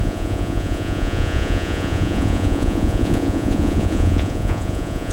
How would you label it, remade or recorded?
remade